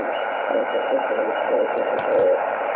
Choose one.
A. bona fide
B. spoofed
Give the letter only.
B